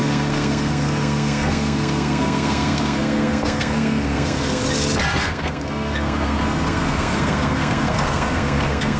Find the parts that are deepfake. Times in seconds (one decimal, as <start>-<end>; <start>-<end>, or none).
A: 0.0-4.6; 5.2-9.0